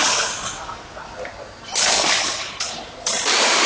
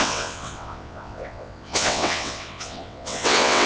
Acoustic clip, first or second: first